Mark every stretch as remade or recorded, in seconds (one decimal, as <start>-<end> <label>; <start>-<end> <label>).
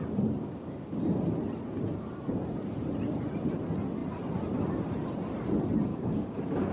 0.0-0.4 recorded; 0.4-1.0 remade; 1.0-5.9 recorded; 5.9-6.7 remade